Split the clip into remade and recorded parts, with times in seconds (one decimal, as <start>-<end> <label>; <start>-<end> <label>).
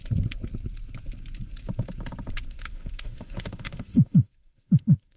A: 0.0-2.5 recorded; 2.5-5.2 remade